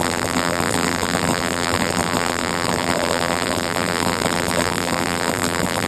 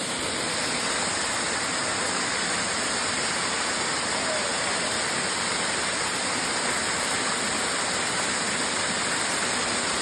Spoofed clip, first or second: first